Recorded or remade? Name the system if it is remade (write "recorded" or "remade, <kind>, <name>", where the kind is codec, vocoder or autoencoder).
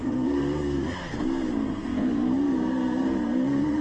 remade, codec, SNAC